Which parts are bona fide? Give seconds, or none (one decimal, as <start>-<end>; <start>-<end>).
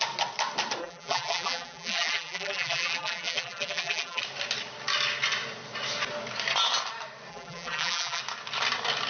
0.0-0.8; 4.2-7.3; 8.2-9.1